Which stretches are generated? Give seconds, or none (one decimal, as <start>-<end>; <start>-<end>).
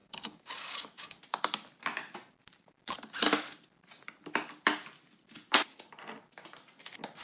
0.0-1.2